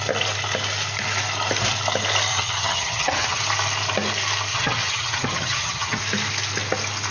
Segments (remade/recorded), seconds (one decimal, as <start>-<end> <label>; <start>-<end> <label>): 0.0-2.3 recorded; 2.3-3.4 remade; 3.4-4.5 recorded; 4.5-6.0 remade; 6.0-7.1 recorded